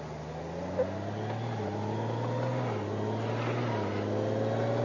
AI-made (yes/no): no